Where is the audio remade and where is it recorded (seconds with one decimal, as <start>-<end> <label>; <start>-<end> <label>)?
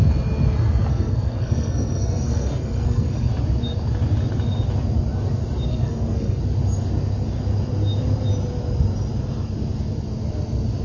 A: 0.0-0.9 recorded; 0.9-3.3 remade; 3.3-5.7 recorded; 5.7-6.4 remade; 6.4-10.8 recorded